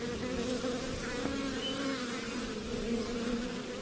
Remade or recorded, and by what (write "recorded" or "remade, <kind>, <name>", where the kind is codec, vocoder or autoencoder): recorded